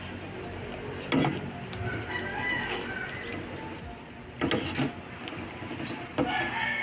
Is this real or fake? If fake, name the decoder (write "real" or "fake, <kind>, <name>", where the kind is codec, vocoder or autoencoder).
real